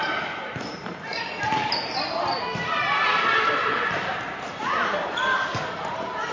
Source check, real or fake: fake